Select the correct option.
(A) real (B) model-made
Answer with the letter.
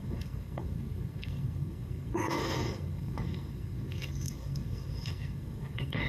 B